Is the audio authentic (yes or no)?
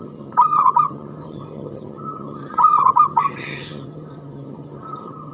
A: no